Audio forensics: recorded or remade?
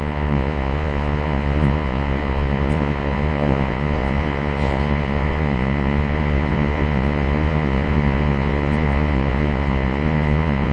remade